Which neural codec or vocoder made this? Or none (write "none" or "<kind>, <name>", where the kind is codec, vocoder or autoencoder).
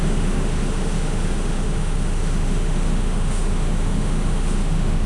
autoencoder, DAC-VAE